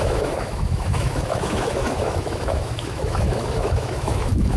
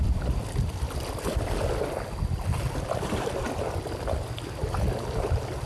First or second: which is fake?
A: first